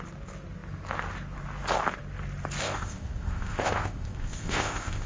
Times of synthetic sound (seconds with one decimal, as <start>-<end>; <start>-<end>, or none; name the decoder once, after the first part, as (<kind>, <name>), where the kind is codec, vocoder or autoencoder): 2.6-5.1 (codec, ZipCodec)